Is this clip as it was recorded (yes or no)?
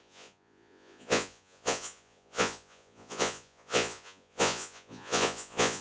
no